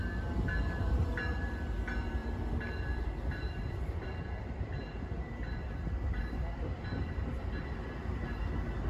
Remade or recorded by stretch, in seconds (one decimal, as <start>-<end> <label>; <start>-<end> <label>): 0.0-2.2 recorded; 2.2-7.3 remade; 7.3-8.9 recorded